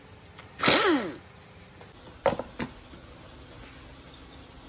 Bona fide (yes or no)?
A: yes